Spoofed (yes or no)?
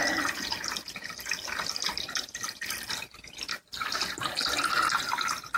no